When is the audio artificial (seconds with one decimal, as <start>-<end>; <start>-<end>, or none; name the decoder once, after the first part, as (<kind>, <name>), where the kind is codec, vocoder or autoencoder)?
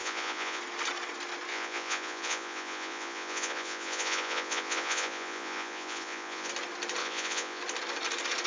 0.0-0.6 (vocoder, Vocos); 1.5-6.5; 7.0-7.6